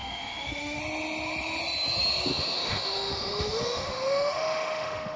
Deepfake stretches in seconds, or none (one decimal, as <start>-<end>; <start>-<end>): 0.0-0.8; 2.3-5.2